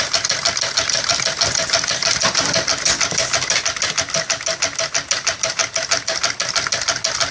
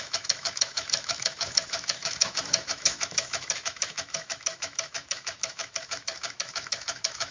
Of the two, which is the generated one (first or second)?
second